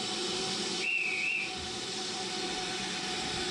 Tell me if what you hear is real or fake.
real